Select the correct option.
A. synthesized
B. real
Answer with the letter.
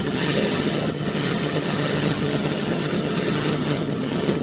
A